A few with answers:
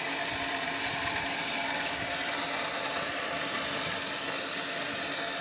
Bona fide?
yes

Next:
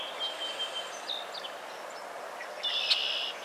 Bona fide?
yes